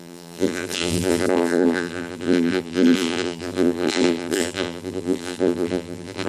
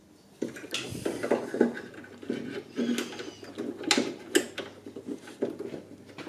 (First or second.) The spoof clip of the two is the first